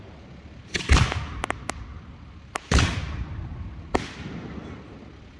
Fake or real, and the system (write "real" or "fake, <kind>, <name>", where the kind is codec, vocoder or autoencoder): real